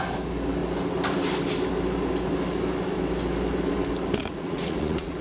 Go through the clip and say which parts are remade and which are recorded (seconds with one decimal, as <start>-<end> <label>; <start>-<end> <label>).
0.0-4.2 recorded; 4.2-5.2 remade